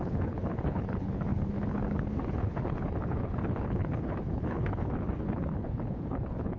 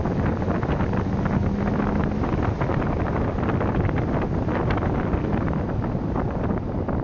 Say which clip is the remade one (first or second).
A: first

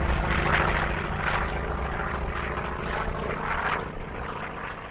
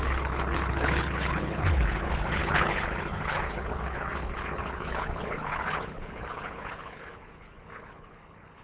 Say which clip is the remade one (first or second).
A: second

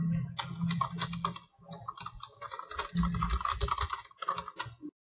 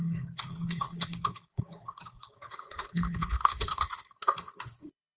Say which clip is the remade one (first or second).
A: second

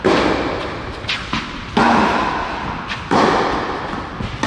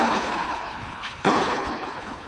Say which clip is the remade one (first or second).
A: second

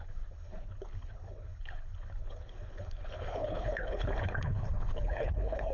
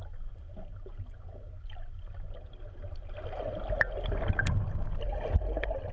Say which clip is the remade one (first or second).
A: first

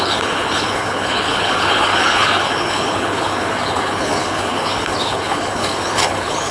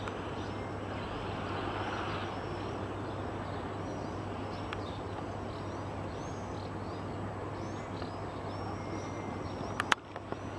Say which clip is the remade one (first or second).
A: first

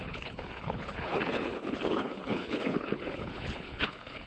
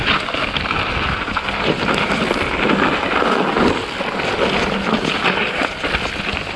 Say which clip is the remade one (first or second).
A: first